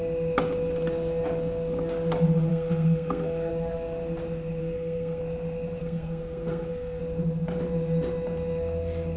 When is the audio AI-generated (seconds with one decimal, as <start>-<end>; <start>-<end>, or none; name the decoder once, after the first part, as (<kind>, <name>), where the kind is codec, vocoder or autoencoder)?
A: 2.5-3.5 (codec, SNAC); 4.6-5.2; 5.8-7.0